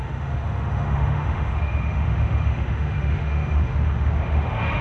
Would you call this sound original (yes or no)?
no